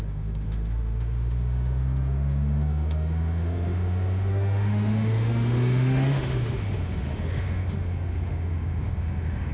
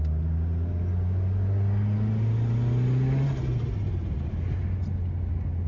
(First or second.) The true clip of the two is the second